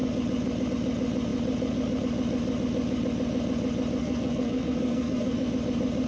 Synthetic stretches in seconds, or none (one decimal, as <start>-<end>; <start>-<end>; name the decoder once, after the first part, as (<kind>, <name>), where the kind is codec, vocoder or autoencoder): 4.0-5.5 (codec, SNAC)